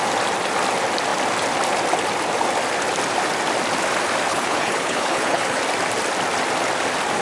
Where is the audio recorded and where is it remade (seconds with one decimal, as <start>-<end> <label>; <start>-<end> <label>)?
0.0-4.3 recorded; 4.3-5.6 remade; 5.6-7.2 recorded